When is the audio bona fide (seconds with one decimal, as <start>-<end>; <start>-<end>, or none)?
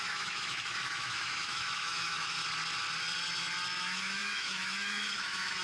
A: 2.4-3.8